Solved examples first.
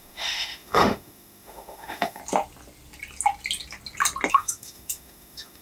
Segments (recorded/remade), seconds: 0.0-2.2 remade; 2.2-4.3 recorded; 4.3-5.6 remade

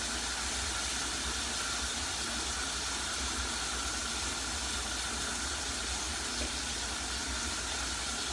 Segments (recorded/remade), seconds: 0.0-8.3 recorded

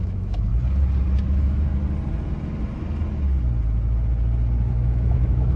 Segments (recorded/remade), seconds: 0.0-0.5 remade; 0.5-1.2 recorded; 1.2-1.7 remade; 1.7-4.7 recorded; 4.7-5.6 remade

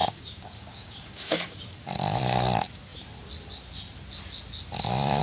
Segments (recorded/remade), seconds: 0.0-1.6 remade; 1.6-5.2 recorded

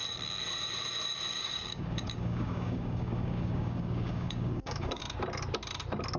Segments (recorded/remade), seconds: 0.0-1.3 recorded; 1.3-5.0 remade; 5.0-6.2 recorded

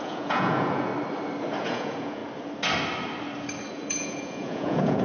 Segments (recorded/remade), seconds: 0.0-0.9 remade; 0.9-1.6 recorded; 1.6-2.2 remade; 2.2-3.7 recorded; 3.7-5.0 remade

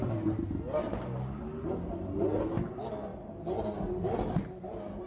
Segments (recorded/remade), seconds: 0.0-5.1 recorded

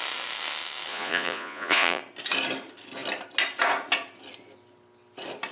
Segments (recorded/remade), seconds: 0.0-0.9 recorded; 0.9-2.0 remade; 2.0-5.5 recorded